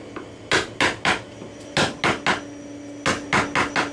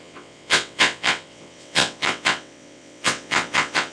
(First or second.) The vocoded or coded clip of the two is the second